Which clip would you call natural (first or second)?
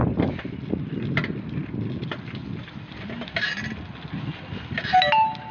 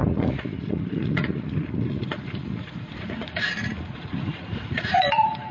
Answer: first